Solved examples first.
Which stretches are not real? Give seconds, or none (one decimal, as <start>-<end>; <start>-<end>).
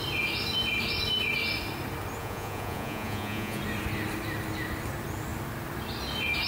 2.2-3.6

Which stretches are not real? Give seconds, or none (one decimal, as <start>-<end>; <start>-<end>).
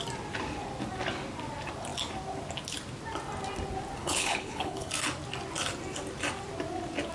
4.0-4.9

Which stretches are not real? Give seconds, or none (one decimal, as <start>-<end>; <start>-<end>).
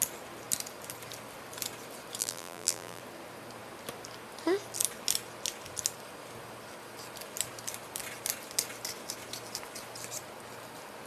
2.2-3.0